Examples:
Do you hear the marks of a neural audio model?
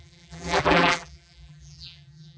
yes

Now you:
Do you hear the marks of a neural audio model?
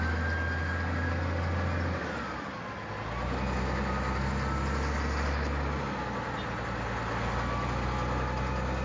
no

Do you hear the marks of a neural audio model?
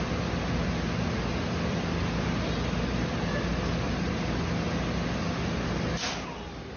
no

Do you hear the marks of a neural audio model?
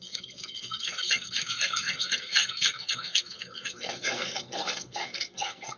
yes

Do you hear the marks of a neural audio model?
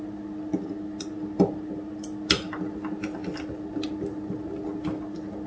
no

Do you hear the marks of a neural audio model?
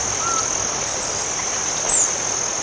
no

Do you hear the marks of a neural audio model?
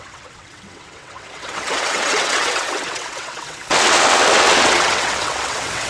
yes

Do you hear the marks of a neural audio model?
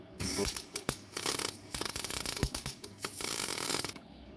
yes